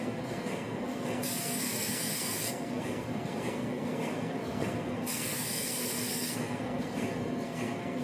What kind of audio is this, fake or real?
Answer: fake